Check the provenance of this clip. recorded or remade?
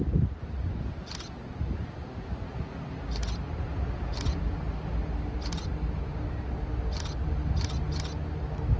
recorded